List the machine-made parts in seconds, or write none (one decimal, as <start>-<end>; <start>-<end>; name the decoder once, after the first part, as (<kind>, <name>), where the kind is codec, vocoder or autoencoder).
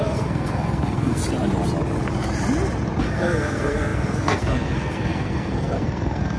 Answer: 0.0-1.2 (codec, SNAC); 3.0-6.4